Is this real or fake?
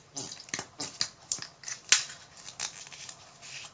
real